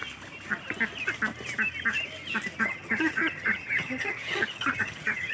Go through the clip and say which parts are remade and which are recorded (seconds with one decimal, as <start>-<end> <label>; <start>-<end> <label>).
0.0-2.6 recorded; 2.6-5.3 remade